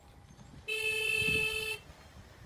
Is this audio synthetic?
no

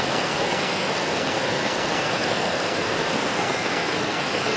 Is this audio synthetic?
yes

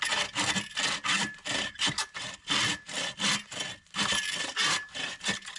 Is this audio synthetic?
no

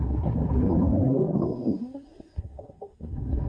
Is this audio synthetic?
yes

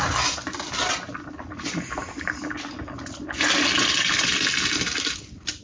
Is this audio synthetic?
no